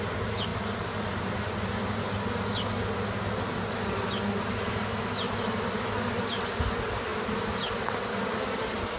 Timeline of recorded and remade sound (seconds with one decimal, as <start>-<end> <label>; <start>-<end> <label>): 0.0-9.0 recorded